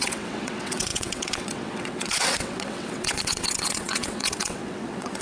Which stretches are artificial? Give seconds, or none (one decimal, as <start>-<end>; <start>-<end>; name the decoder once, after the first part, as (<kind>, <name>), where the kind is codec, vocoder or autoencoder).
0.0-5.2 (vocoder, WaveNeXt)